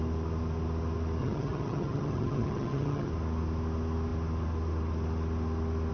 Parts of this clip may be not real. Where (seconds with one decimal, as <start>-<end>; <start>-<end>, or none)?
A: 1.2-3.1